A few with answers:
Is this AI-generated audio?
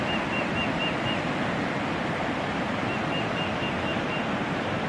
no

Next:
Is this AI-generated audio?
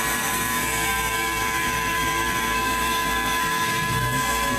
yes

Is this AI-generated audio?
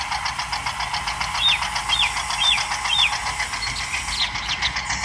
no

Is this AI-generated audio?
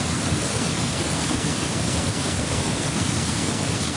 yes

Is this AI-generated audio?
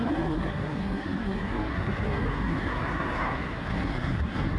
yes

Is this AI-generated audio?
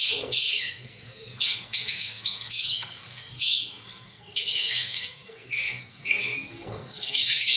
yes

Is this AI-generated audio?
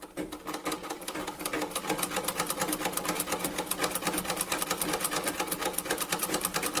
no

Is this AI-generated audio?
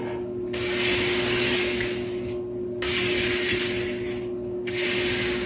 no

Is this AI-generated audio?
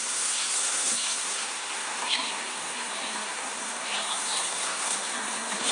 yes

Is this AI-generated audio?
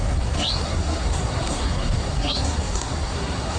yes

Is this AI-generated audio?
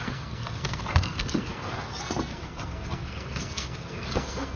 yes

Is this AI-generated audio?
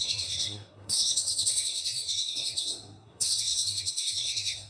yes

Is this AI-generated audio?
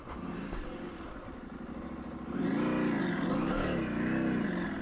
no